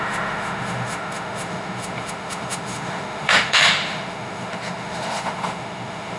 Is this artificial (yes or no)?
yes